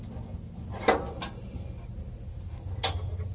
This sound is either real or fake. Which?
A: real